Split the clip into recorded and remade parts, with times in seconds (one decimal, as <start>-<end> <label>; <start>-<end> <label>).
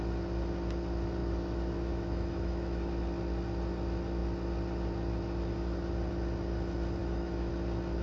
0.0-1.2 recorded; 1.2-2.9 remade; 2.9-7.0 recorded; 7.0-7.5 remade; 7.5-8.0 recorded